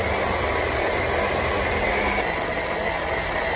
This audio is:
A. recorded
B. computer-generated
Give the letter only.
A